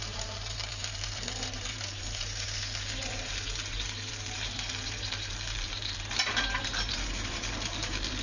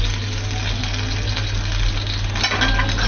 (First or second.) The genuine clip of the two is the second